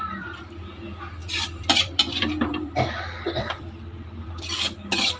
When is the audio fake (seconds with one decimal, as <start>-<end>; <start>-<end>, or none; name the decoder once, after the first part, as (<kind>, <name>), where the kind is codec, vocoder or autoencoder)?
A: 0.0-5.2 (vocoder, BigVGAN v2)

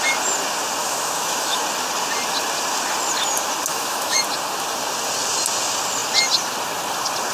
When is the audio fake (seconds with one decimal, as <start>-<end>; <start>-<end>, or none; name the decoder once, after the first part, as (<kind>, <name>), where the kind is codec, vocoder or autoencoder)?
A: 0.8-1.6 (autoencoder, DAC-VAE); 3.7-4.2

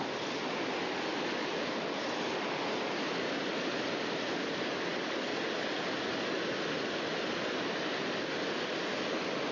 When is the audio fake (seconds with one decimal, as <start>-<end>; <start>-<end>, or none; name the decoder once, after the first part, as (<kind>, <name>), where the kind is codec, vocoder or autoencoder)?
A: 2.0-4.3 (vocoder, BigVGAN v2)

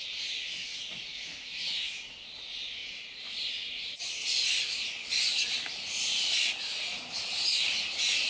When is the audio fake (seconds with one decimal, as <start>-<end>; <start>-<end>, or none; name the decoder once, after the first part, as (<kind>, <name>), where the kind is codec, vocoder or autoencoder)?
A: 1.1-2.0 (autoencoder, DAC-VAE)

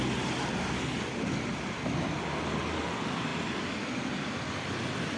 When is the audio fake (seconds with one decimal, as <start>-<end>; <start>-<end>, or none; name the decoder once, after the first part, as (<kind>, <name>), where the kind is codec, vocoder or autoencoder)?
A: none

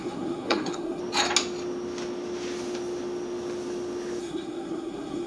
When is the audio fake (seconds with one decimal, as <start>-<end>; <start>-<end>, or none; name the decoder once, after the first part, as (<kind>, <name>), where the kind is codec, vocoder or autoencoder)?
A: 0.0-1.0 (codec, SNAC); 4.2-5.3

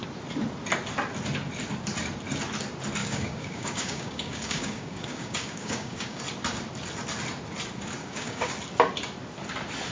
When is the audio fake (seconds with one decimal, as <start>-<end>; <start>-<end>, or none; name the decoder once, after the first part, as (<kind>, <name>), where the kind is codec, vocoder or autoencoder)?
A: 3.0-6.2 (codec, DAC); 8.0-8.5